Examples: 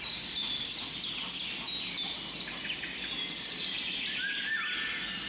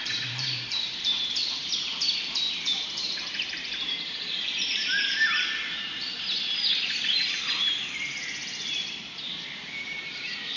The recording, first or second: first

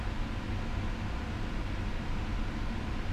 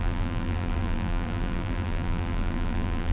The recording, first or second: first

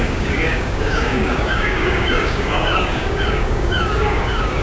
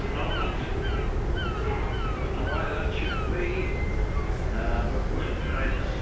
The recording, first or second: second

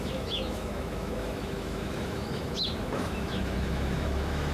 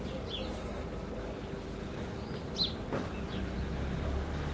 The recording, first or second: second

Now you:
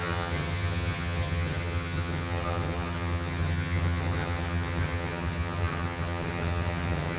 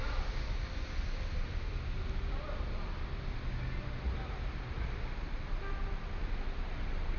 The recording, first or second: second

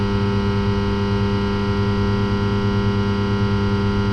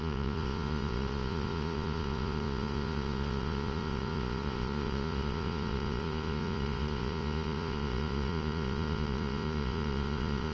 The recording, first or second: first